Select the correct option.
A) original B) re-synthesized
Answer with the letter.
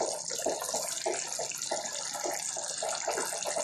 A